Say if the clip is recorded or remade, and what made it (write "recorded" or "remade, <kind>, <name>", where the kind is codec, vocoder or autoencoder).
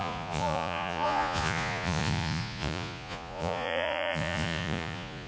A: remade, vocoder, Vocos